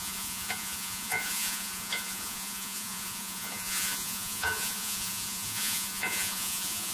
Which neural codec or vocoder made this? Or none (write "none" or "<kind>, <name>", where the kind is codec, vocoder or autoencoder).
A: vocoder, Vocos